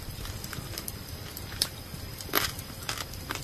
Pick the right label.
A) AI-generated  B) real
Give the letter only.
B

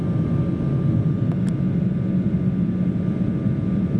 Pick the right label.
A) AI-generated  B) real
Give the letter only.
B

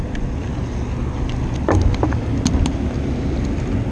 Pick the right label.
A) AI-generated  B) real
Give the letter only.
B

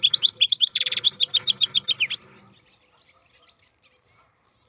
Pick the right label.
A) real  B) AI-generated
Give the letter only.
B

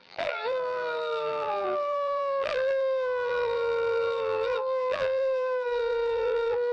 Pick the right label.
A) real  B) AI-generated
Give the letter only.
B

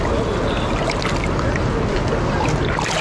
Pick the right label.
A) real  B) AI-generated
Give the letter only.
A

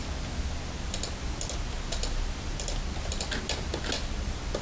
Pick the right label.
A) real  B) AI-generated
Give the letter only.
A